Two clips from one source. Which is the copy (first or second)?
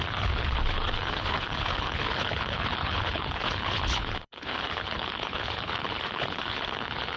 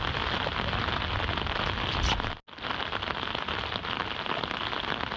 first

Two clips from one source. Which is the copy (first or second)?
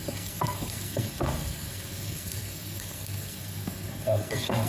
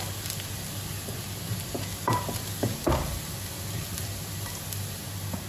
first